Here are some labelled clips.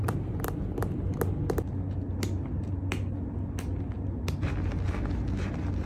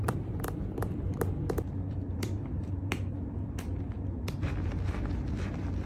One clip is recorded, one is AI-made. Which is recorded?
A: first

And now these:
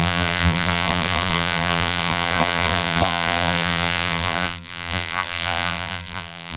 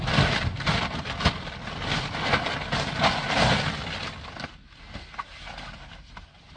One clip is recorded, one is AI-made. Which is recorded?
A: second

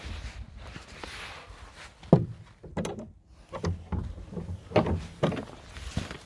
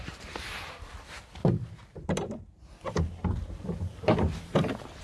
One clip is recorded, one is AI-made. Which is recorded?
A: first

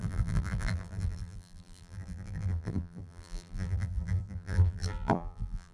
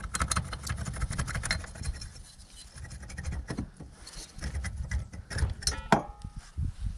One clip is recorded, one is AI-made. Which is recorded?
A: second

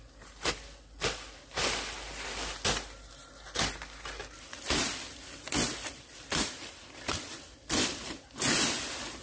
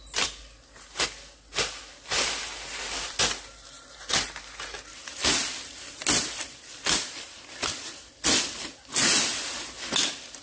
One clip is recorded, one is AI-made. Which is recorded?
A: second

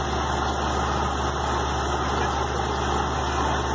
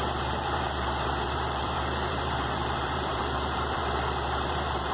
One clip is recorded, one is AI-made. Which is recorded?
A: first